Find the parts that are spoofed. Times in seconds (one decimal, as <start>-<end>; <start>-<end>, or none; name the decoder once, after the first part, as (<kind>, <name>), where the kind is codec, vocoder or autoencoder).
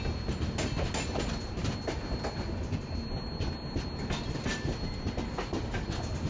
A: none